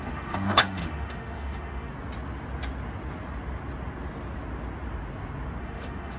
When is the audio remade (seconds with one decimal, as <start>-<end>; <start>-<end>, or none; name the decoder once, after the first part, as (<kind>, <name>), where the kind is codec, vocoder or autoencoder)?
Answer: 0.0-1.9 (autoencoder, DAC-VAE); 5.6-6.2